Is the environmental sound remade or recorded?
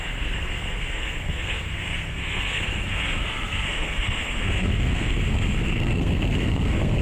remade